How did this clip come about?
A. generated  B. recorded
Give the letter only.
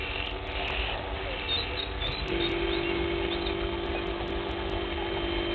B